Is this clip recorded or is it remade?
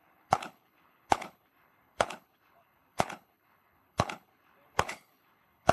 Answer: remade